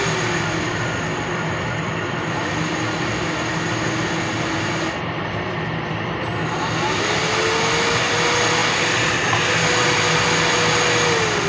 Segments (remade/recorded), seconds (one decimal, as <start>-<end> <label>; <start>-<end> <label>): 0.0-11.5 recorded